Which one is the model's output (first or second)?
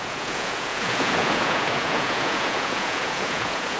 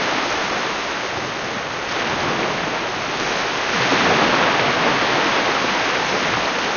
first